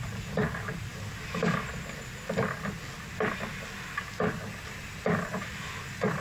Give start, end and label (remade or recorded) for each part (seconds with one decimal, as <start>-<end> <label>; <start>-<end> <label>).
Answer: 0.0-6.2 recorded